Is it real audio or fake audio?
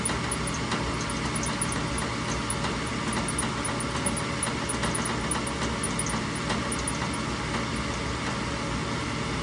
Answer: real